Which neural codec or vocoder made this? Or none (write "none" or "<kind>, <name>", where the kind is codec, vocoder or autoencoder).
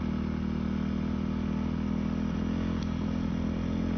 none